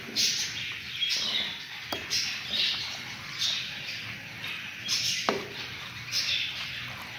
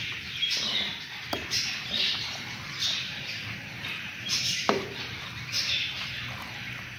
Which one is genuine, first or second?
first